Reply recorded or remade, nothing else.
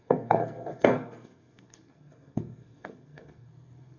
remade